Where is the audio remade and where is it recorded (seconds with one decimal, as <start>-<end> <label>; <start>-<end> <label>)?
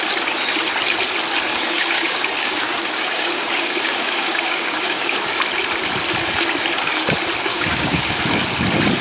0.0-1.5 recorded; 1.5-5.4 remade; 5.4-7.5 recorded; 7.5-8.2 remade; 8.2-9.0 recorded